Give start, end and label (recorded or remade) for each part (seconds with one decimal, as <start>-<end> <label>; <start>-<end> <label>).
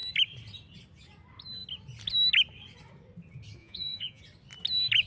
0.0-3.6 recorded; 3.6-4.2 remade; 4.2-5.1 recorded